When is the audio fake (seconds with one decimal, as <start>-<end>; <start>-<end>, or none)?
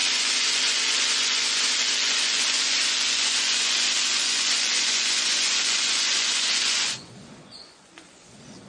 0.0-8.7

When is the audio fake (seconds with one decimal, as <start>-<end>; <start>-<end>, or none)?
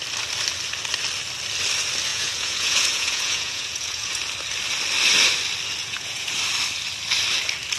2.1-4.2; 5.8-6.3